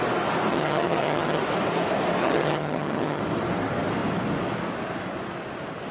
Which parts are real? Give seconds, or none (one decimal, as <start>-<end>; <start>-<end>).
0.0-0.5; 1.4-2.2; 3.2-5.9